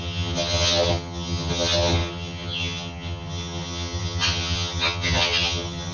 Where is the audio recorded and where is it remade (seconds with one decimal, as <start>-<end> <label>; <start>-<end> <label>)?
0.0-5.9 remade